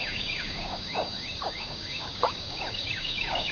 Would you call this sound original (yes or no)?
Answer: no